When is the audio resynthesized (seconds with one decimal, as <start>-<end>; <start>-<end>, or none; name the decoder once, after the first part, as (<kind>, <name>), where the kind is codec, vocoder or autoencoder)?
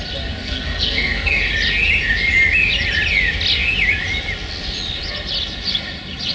0.4-1.4 (codec, SNAC)